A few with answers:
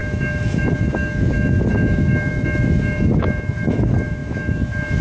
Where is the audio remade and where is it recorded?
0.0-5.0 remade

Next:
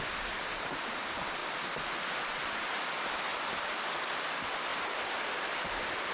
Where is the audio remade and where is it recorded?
0.0-1.4 recorded; 1.4-1.9 remade; 1.9-3.3 recorded; 3.3-4.0 remade; 4.0-6.1 recorded